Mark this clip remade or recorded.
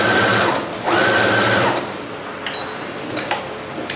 recorded